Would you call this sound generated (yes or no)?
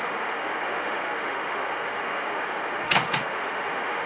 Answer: yes